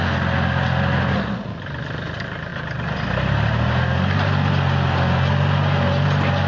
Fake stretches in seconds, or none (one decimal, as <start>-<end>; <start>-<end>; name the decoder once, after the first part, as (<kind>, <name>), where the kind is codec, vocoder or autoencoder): none